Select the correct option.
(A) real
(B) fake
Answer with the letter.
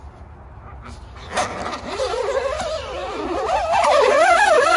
A